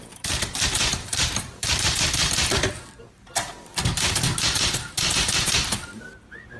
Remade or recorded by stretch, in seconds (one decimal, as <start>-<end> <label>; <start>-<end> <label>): 0.0-4.3 remade; 4.3-4.8 recorded; 4.8-6.6 remade